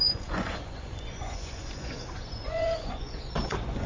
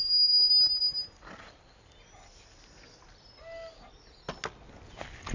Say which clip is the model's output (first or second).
first